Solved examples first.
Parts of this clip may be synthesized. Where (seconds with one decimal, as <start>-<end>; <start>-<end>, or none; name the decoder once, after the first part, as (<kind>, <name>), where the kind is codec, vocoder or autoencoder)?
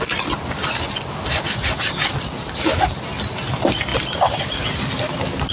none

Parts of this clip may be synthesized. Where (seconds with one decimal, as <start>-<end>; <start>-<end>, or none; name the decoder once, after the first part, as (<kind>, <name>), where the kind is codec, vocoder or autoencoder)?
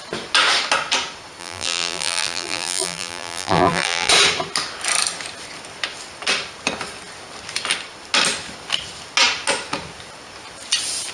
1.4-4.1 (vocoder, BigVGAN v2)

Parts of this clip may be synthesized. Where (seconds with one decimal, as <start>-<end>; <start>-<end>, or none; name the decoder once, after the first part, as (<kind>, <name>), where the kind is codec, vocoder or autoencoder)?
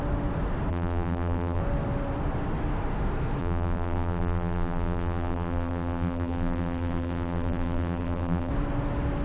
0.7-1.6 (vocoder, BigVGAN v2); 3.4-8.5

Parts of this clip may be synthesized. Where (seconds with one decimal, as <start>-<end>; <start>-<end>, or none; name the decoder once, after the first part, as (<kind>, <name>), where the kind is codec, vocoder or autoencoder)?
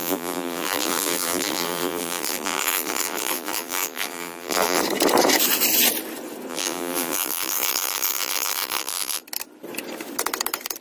0.0-4.8 (vocoder, BigVGAN v2); 6.5-9.2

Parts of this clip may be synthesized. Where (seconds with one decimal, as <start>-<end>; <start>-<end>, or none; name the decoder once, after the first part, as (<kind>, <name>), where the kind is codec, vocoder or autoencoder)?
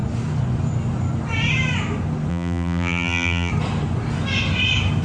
2.3-3.5 (vocoder, BigVGAN v2)